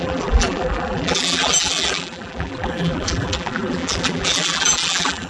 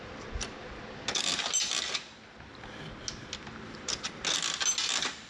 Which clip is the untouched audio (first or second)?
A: second